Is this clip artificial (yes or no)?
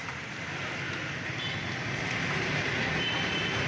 no